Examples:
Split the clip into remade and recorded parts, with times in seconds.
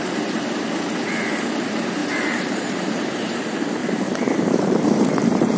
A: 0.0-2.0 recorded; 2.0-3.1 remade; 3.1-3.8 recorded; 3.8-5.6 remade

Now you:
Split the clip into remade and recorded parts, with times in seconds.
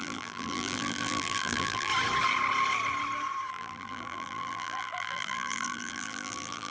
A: 0.0-1.9 remade; 1.9-3.5 recorded; 3.5-6.7 remade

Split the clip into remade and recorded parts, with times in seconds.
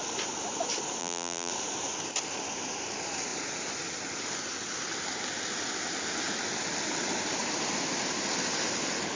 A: 0.0-1.0 recorded; 1.0-1.5 remade; 1.5-9.2 recorded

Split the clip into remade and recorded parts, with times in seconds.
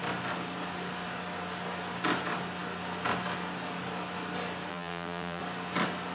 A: 0.0-4.7 recorded; 4.7-5.4 remade; 5.4-6.1 recorded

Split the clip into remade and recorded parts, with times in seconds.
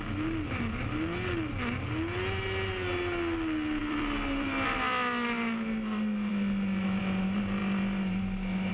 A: 0.0-3.8 recorded; 3.8-4.8 remade; 4.8-8.7 recorded